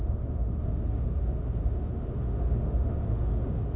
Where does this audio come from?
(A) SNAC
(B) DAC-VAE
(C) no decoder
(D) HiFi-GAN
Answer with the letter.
B